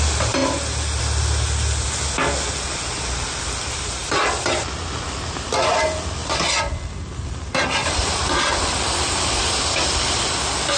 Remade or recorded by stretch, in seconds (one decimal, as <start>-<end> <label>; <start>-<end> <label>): 0.0-7.8 recorded; 7.8-8.5 remade; 8.5-10.8 recorded